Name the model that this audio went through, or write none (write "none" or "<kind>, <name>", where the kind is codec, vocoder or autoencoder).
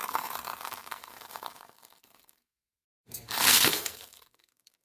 codec, SNAC